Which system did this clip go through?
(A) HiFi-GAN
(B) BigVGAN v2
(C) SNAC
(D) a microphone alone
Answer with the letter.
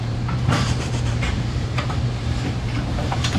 B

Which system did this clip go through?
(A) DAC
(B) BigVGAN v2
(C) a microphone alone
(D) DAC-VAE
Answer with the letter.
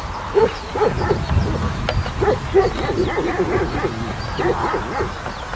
C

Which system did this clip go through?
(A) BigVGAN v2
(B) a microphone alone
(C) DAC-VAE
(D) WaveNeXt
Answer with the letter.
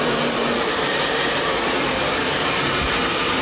A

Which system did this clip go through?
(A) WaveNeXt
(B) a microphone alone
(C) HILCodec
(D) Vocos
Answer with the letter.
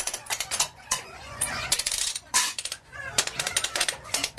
D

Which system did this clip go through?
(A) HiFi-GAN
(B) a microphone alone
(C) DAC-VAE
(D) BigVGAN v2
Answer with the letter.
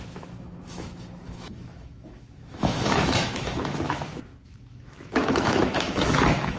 C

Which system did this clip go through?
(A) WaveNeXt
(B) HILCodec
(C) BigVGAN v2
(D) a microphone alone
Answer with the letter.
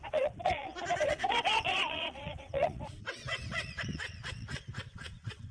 A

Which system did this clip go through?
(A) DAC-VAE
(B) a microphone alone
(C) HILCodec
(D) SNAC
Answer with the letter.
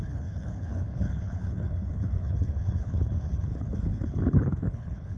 C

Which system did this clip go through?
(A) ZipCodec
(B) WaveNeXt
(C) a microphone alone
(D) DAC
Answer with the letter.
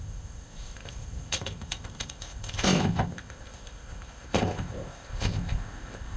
A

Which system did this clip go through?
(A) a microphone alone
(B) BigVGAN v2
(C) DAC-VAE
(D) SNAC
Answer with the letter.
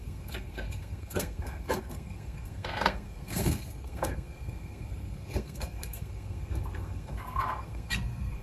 D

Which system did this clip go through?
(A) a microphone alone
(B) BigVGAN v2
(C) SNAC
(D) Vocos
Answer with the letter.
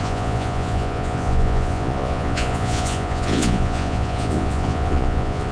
D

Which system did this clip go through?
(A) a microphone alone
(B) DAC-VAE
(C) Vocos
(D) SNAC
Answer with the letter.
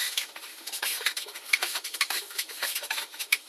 B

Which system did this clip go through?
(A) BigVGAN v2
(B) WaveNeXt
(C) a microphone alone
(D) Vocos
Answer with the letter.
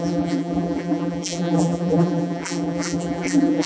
A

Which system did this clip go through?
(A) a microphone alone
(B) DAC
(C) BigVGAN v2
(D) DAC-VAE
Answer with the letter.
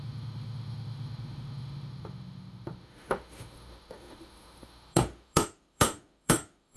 D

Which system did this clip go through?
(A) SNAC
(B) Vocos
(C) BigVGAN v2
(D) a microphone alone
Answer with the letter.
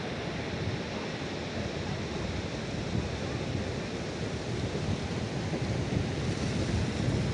D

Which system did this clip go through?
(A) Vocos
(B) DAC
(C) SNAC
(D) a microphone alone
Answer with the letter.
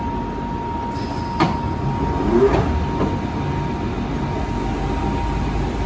D